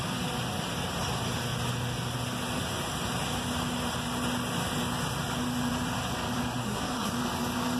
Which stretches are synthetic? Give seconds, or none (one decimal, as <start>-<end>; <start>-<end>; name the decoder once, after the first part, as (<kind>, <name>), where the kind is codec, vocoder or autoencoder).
6.6-7.1 (codec, SNAC)